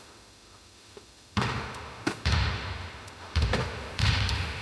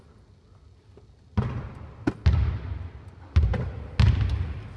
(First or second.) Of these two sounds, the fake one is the first